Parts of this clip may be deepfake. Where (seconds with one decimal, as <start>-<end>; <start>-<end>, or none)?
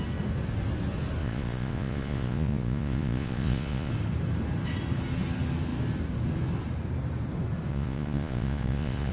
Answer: 1.2-3.9; 7.7-9.1